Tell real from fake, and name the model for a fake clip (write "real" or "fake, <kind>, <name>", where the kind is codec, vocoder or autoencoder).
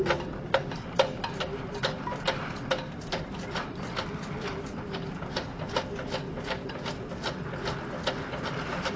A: real